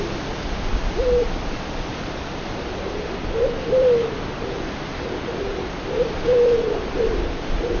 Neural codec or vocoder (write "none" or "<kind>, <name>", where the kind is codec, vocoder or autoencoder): vocoder, BigVGAN v2